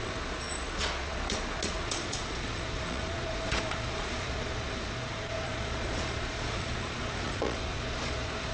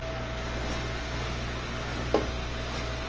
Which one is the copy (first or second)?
first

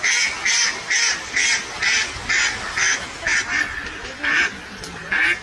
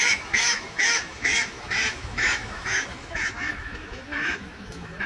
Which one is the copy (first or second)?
second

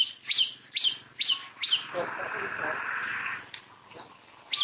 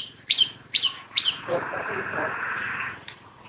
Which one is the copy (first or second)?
second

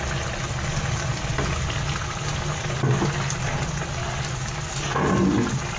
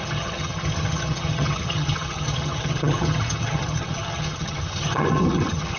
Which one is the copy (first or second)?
second